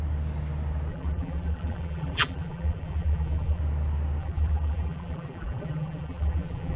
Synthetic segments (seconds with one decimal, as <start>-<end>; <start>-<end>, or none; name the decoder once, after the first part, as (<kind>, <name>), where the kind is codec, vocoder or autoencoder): 0.9-3.6 (vocoder, BigVGAN v2); 4.2-6.8